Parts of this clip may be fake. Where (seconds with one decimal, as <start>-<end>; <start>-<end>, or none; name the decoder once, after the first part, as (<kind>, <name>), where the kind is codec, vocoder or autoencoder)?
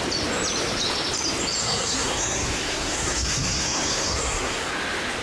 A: 1.6-4.7 (codec, SNAC)